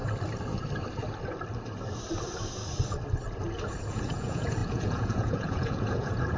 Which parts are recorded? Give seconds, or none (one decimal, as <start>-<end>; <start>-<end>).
0.0-3.8

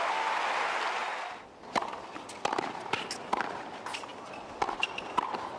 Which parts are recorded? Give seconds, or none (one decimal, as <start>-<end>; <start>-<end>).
0.0-5.6

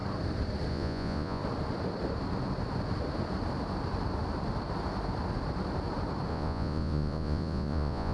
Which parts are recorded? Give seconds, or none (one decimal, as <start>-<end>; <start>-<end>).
0.0-0.7; 1.4-6.3

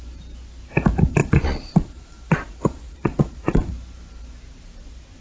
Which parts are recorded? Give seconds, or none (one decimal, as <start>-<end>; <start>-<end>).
0.0-1.2; 3.7-5.2

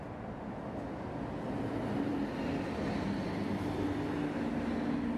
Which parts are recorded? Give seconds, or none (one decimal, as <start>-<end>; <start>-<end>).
0.0-5.2